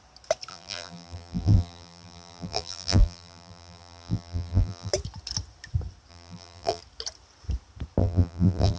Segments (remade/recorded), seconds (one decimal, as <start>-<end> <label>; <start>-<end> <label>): 0.0-0.5 recorded; 0.5-4.9 remade; 4.9-6.1 recorded; 6.1-6.8 remade; 6.8-8.0 recorded; 8.0-8.8 remade

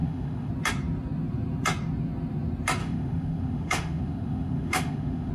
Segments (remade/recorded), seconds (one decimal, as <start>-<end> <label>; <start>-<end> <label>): 0.0-0.5 remade; 0.5-2.8 recorded; 2.8-5.3 remade

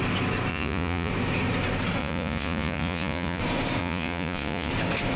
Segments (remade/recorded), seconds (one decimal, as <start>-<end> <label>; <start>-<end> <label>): 0.0-0.5 recorded; 0.5-1.1 remade; 1.1-2.0 recorded; 2.0-3.4 remade; 3.4-3.8 recorded; 3.8-4.7 remade; 4.7-5.2 recorded

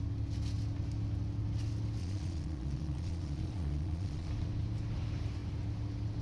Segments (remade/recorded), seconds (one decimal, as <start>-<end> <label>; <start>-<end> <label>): 0.0-2.0 recorded; 2.0-4.3 remade; 4.3-6.2 recorded

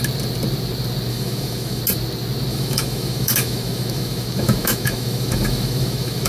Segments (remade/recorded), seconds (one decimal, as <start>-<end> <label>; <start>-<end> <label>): 0.0-1.1 recorded; 1.1-1.8 remade; 1.8-2.5 recorded; 2.5-6.3 remade

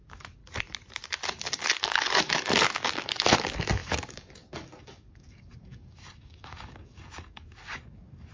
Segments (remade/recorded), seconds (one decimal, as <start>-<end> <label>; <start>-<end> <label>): 0.0-0.4 remade; 0.4-1.8 recorded; 1.8-8.3 remade

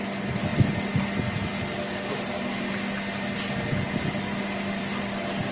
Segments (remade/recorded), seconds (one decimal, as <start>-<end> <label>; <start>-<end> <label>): 0.0-5.5 recorded